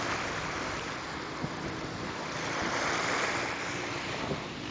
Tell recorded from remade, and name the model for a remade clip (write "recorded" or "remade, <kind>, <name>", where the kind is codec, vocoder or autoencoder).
recorded